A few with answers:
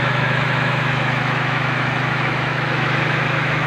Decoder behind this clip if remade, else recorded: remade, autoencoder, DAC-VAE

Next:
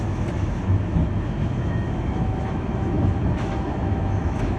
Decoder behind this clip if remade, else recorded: remade, autoencoder, DAC-VAE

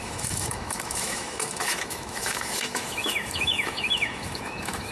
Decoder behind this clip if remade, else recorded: remade, autoencoder, DAC-VAE